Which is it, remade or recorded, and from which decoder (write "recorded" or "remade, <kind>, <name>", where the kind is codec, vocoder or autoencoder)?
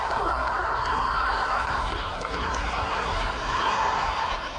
remade, codec, SNAC